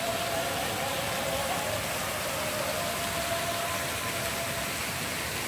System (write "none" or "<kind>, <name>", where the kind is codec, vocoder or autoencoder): none